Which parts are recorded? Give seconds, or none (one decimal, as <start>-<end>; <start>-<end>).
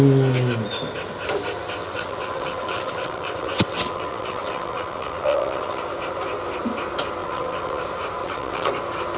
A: 0.0-1.8; 5.8-7.2; 7.8-8.2; 8.7-9.2